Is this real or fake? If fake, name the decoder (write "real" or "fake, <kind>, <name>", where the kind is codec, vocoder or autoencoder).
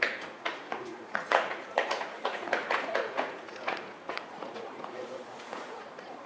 fake, vocoder, Vocos